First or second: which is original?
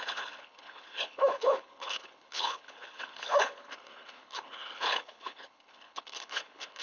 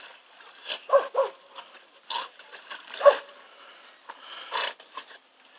second